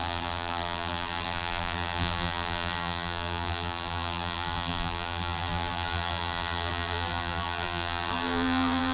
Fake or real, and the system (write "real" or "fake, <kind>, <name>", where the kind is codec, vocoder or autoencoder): fake, vocoder, BigVGAN v2